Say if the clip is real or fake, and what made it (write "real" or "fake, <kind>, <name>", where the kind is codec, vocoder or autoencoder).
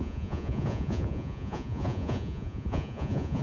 fake, vocoder, Vocos